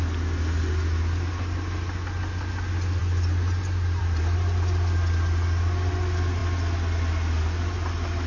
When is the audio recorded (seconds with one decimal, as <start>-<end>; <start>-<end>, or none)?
0.0-8.3